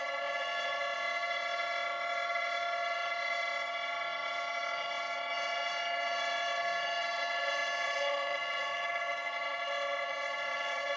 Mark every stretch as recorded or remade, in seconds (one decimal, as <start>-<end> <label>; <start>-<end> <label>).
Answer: 0.0-11.0 remade